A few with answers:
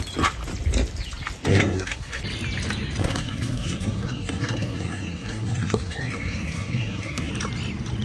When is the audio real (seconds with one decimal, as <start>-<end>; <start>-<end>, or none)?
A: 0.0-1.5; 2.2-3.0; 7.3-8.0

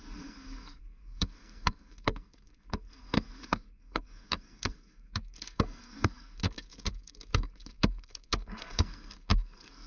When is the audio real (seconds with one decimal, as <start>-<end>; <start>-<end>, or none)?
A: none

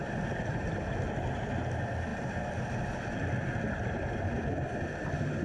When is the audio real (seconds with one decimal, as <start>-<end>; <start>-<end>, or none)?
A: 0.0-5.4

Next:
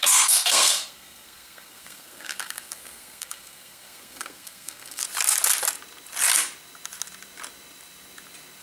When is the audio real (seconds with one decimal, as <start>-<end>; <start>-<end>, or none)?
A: 5.0-8.6

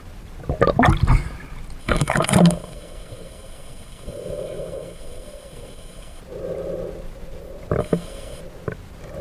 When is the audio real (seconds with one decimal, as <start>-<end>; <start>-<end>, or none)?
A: 0.0-1.8; 6.2-7.8; 8.4-9.2

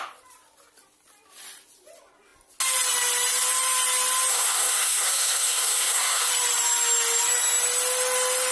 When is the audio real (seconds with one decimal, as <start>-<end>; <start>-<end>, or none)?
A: 0.0-4.3; 6.3-8.5

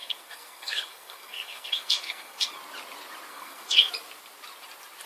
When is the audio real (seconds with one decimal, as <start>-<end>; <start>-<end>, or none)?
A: 2.5-3.3; 3.9-5.1